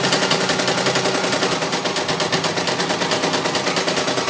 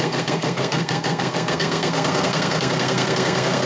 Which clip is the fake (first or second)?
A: second